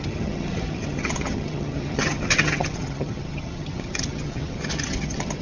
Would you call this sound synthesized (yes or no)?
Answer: yes